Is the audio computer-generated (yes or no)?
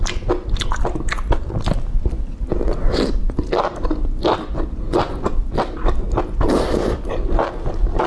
no